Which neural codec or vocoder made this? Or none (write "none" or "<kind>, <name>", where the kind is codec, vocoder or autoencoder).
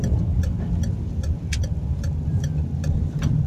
none